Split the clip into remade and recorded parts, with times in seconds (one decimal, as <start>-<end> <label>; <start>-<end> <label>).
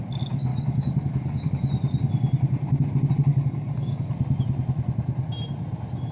0.0-0.5 recorded; 0.5-1.5 remade; 1.5-3.3 recorded; 3.3-4.1 remade; 4.1-6.1 recorded